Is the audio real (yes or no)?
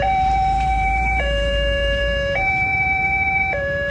no